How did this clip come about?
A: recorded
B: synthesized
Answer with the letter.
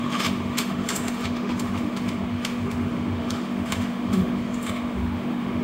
B